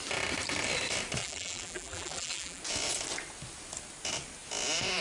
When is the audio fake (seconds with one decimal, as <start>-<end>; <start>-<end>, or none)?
1.2-2.6